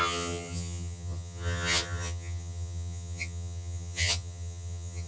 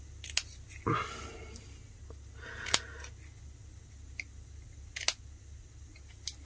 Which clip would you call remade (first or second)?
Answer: first